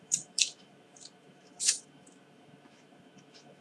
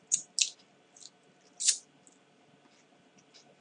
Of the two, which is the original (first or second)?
second